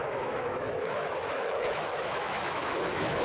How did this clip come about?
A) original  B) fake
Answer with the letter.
B